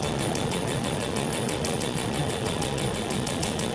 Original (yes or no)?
no